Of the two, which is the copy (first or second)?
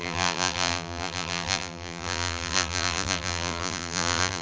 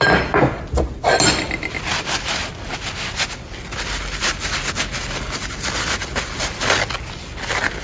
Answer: first